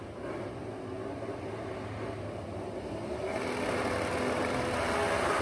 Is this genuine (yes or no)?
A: yes